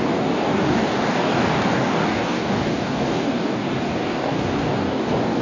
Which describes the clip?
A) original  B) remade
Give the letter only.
B